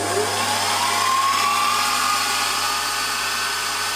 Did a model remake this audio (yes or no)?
no